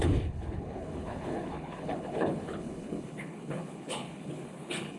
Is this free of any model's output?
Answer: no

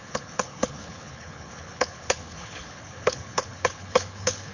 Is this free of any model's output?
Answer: no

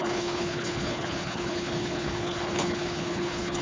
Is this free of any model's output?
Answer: no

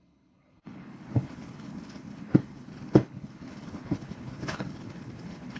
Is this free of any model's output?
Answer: no